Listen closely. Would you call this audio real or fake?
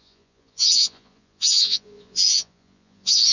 fake